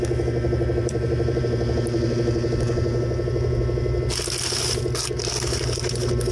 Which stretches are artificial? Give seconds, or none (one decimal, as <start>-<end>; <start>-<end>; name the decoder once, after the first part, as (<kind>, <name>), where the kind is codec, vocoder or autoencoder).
0.8-1.4 (vocoder, BigVGAN v2)